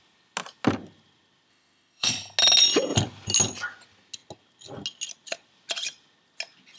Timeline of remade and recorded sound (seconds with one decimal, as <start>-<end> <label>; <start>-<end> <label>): 0.0-1.5 recorded; 1.5-2.1 remade; 2.1-6.8 recorded